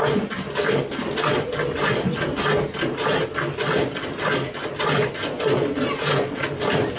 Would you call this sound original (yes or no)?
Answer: yes